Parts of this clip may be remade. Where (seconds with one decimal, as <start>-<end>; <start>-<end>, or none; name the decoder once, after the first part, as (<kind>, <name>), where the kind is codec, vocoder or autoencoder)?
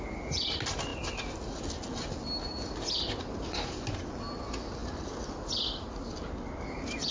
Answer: none